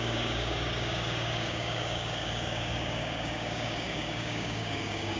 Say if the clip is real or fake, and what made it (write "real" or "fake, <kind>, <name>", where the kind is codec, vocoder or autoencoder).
fake, codec, DAC